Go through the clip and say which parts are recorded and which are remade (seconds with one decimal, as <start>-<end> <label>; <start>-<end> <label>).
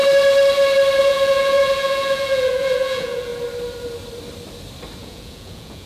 0.0-1.0 recorded; 1.0-3.3 remade; 3.3-5.0 recorded; 5.0-5.9 remade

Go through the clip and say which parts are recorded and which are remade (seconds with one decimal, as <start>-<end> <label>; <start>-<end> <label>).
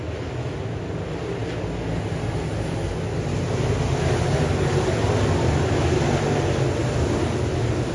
0.0-6.8 recorded; 6.8-7.5 remade; 7.5-7.9 recorded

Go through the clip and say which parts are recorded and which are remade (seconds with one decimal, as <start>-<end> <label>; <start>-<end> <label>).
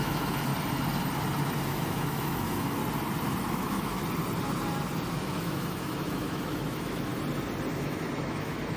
0.0-0.5 remade; 0.5-1.6 recorded; 1.6-2.8 remade; 2.8-3.5 recorded; 3.5-4.0 remade; 4.0-5.1 recorded; 5.1-7.1 remade; 7.1-7.7 recorded; 7.7-8.8 remade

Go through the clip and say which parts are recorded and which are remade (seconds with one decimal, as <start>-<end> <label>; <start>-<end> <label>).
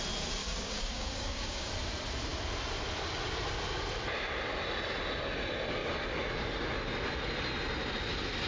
0.0-0.4 recorded; 0.4-1.7 remade; 1.7-8.5 recorded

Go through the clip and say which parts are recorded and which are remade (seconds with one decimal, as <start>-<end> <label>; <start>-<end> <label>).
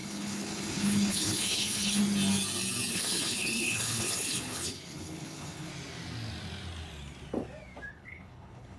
0.0-2.0 remade; 2.0-2.9 recorded; 2.9-5.7 remade; 5.7-7.9 recorded; 7.9-8.8 remade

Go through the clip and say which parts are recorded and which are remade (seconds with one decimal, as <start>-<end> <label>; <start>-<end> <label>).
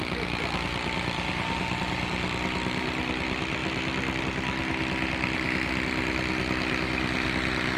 0.0-7.8 recorded